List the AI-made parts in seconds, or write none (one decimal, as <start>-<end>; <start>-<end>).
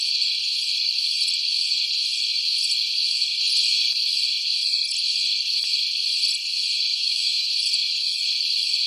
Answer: 6.9-7.5